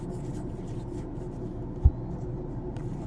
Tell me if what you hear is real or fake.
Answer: real